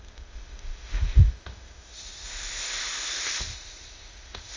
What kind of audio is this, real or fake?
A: fake